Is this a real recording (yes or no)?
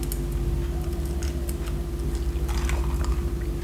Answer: yes